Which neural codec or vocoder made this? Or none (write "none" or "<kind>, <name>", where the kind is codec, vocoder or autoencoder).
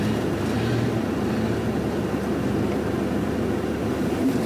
none